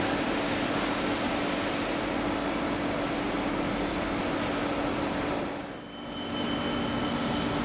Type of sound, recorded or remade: recorded